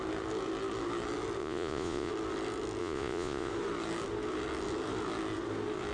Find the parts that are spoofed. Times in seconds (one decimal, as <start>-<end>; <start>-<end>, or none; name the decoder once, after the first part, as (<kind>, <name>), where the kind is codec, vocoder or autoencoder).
1.4-2.1 (vocoder, Vocos); 2.8-3.5